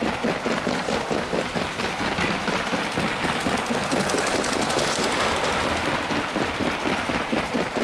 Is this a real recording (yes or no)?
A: yes